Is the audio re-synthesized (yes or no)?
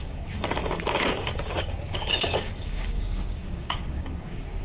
yes